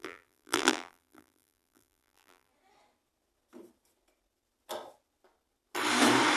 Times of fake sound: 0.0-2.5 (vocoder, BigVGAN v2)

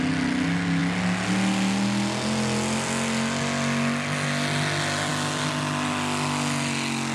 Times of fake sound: none

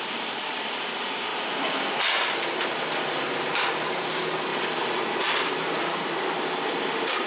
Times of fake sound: 0.0-1.3 (vocoder, BigVGAN v2); 3.1-7.3

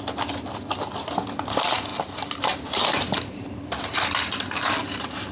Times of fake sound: 1.9-5.3 (vocoder, BigVGAN v2)

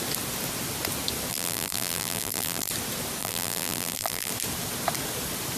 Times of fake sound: 1.3-2.7 (vocoder, BigVGAN v2); 3.2-4.3

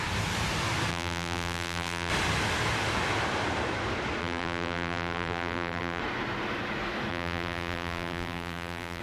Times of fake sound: 0.9-2.1 (vocoder, BigVGAN v2); 4.2-6.0; 7.1-9.0